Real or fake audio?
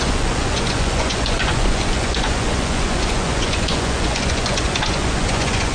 fake